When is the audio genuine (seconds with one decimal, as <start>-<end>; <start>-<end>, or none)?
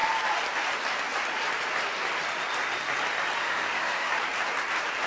0.0-3.4; 4.1-5.1